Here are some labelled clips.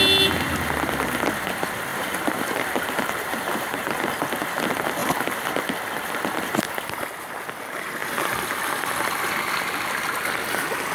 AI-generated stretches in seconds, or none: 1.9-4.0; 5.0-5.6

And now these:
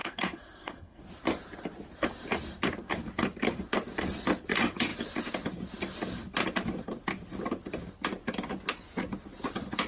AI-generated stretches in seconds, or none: 0.0-1.0